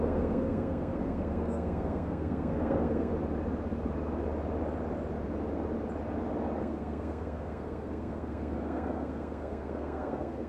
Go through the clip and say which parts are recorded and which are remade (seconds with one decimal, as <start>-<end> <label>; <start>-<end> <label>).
0.0-3.1 remade; 3.1-6.6 recorded; 6.6-10.5 remade